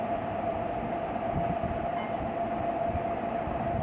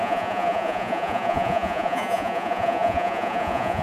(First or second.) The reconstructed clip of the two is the second